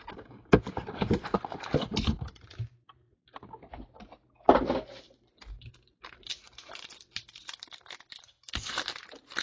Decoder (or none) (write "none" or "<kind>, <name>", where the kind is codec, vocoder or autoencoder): vocoder, BigVGAN v2